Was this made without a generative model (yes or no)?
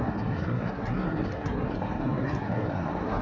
no